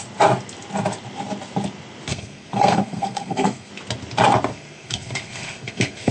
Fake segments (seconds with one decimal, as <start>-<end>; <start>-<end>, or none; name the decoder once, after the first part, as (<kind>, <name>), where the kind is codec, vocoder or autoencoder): 2.1-3.7 (codec, SNAC); 4.5-6.1